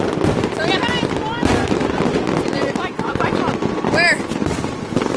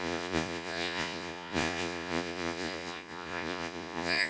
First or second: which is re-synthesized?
second